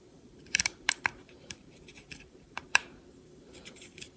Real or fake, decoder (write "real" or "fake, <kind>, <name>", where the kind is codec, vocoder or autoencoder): fake, vocoder, BigVGAN v2